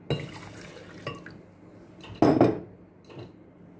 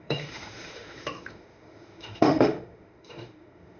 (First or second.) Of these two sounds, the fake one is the second